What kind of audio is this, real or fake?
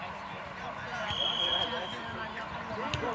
real